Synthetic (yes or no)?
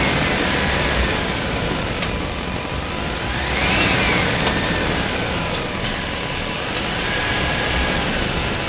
no